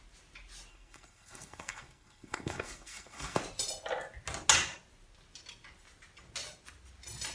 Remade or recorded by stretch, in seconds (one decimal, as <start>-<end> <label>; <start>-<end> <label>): 0.0-0.7 recorded; 0.7-3.4 remade; 3.4-7.3 recorded